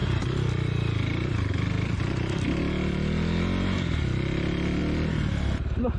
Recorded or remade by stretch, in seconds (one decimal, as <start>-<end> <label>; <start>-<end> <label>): 0.0-2.6 remade; 2.6-6.0 recorded